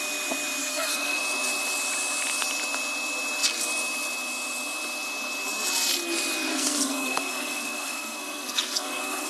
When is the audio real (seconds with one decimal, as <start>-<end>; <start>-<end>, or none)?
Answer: 0.0-0.6; 1.2-6.5